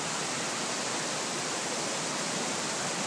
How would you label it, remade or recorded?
remade